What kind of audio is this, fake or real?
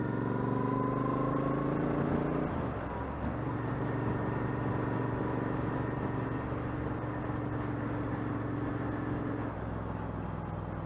real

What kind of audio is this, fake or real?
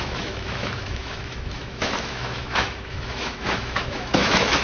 fake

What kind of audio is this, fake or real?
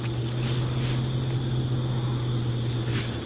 real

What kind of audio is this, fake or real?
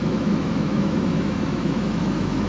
fake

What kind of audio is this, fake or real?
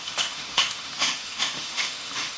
fake